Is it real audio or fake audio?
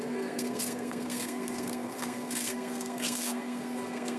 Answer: fake